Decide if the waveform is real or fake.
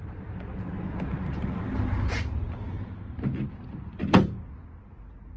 real